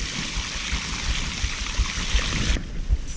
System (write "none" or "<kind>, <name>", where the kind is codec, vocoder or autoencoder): none